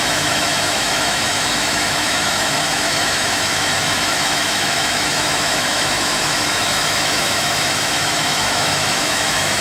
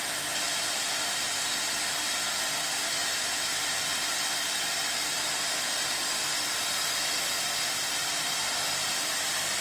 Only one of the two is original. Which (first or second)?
second